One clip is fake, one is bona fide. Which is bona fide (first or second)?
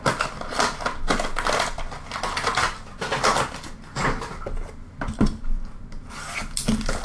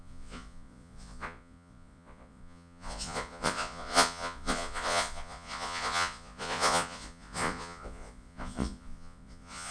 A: first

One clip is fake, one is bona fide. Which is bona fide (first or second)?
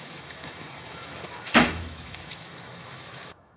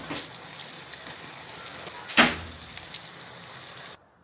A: second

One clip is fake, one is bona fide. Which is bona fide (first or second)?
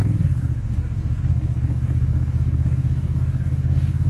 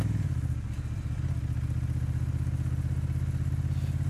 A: second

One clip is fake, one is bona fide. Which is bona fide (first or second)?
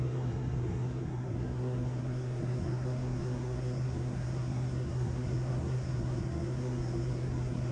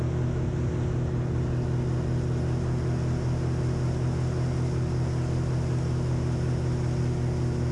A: second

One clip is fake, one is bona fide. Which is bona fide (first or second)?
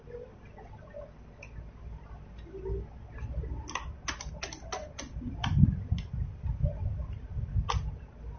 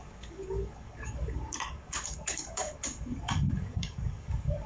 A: first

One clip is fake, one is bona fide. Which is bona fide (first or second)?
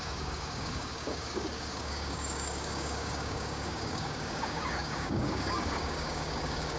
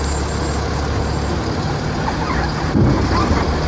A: second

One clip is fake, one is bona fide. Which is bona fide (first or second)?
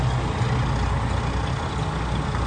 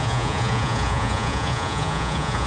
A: first